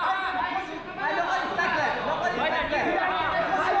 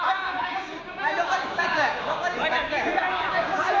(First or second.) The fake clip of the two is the second